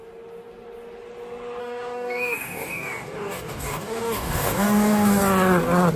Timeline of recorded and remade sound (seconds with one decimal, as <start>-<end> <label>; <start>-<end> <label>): 0.0-1.6 recorded; 1.6-5.2 remade; 5.2-6.0 recorded

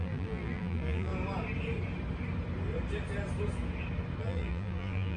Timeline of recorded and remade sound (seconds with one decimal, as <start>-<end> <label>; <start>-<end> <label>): 0.0-1.1 remade; 1.1-4.2 recorded; 4.2-5.2 remade

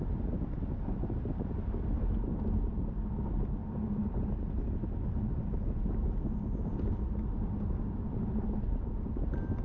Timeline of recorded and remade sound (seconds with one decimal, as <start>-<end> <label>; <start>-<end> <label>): 0.0-9.6 recorded

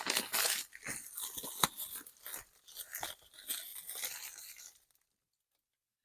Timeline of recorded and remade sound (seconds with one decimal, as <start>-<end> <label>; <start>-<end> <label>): 0.0-6.0 recorded

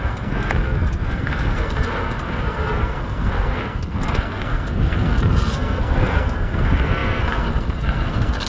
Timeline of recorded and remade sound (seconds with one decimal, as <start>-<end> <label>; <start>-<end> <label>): 0.0-8.5 remade